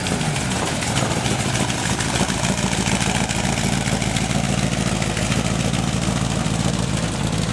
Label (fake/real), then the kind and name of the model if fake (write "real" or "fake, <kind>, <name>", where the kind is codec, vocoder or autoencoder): real